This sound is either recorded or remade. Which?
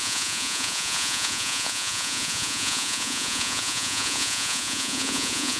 remade